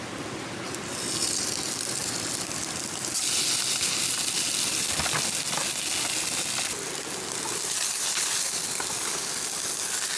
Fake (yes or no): no